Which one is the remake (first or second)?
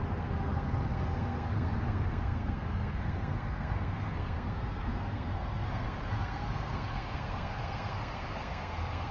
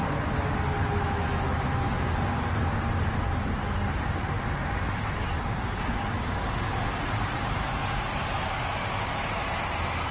first